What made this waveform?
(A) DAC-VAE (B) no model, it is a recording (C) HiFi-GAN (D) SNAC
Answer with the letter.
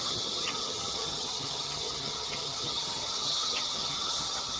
C